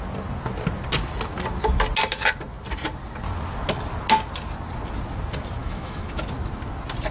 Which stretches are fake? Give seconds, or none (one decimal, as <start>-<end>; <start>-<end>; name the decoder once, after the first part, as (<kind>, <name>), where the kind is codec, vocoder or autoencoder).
5.6-6.1 (autoencoder, DAC-VAE)